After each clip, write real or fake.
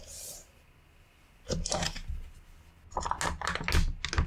real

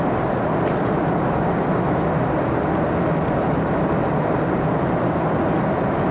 real